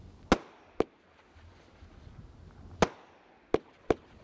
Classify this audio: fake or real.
real